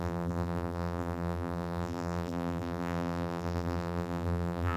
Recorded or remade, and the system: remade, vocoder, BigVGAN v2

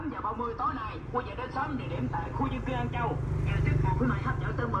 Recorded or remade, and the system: recorded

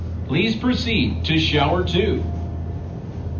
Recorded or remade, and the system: recorded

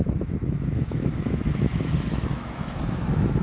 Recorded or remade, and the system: remade, autoencoder, DAC-VAE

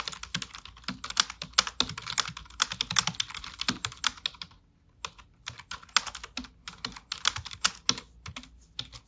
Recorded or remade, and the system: recorded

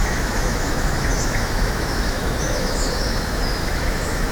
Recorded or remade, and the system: remade, autoencoder, DAC-VAE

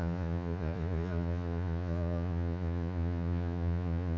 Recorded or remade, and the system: remade, vocoder, Vocos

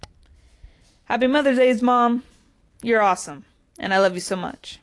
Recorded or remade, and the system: remade, vocoder, BigVGAN v2